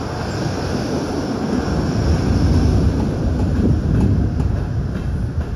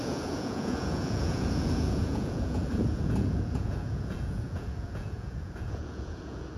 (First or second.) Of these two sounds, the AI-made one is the second